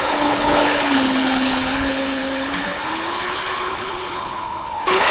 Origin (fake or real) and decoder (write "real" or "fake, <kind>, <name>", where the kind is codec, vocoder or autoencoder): fake, codec, HILCodec